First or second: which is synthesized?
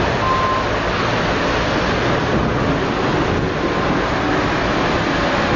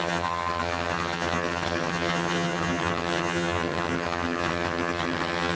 second